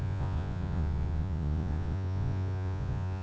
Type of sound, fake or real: fake